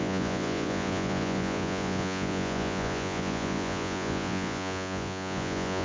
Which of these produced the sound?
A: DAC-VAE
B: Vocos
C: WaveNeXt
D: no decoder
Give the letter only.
B